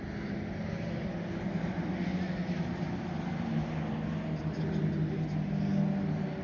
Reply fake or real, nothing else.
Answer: real